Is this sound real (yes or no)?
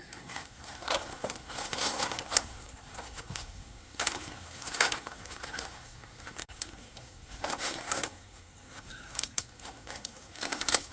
no